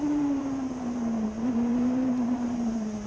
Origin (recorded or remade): remade